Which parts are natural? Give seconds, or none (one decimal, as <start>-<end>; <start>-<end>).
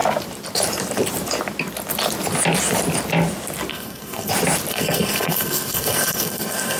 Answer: 0.0-3.7; 4.3-4.7